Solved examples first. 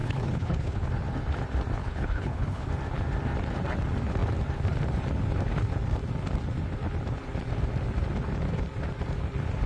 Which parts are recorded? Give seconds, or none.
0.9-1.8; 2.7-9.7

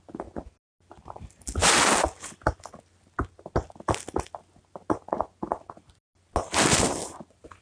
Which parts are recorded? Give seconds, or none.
0.0-7.6

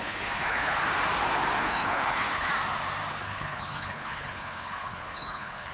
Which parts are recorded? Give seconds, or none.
0.8-1.6; 2.5-3.1

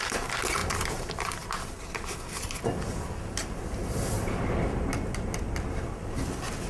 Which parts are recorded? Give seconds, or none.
0.0-6.7

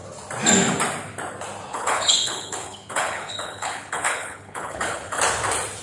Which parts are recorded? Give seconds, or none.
0.0-1.7; 5.2-5.8

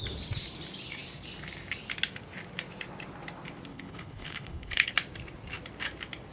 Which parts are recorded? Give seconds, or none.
0.0-3.7; 4.9-6.3